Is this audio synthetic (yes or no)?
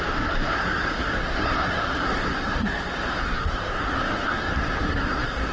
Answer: yes